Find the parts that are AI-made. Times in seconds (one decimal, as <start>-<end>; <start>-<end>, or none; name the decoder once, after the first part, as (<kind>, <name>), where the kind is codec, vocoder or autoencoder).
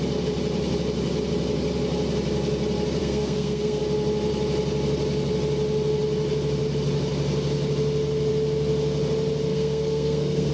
3.0-3.8 (codec, SNAC); 9.5-10.5